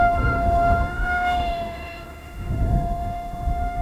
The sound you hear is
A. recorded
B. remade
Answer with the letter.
B